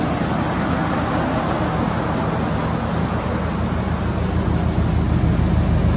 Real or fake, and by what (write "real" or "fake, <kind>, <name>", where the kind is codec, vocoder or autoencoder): real